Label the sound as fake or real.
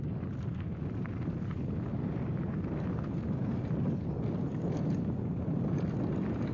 real